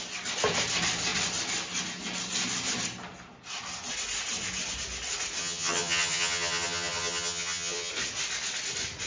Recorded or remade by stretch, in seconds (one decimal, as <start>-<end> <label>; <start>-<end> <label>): 0.0-5.4 recorded; 5.4-7.9 remade; 7.9-9.1 recorded